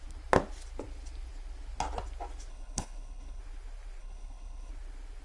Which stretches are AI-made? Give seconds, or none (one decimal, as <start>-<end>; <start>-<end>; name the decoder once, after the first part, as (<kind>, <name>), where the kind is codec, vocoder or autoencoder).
2.5-3.4 (codec, HILCodec); 4.0-4.7